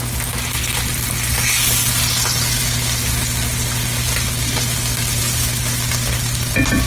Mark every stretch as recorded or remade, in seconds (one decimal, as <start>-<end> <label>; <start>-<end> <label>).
0.0-6.9 recorded

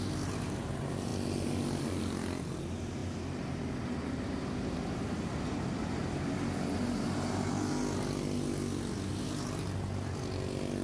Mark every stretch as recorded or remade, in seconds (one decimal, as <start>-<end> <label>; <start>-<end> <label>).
0.0-10.8 recorded

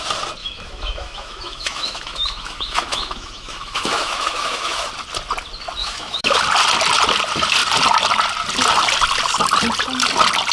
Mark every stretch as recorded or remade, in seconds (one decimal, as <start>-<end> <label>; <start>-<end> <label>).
0.0-0.4 recorded; 0.4-4.9 remade; 4.9-5.8 recorded; 5.8-6.4 remade; 6.4-10.5 recorded

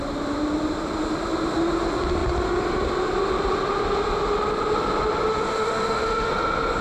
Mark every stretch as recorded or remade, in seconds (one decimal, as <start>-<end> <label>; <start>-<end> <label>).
0.0-5.3 recorded; 5.3-6.3 remade; 6.3-6.8 recorded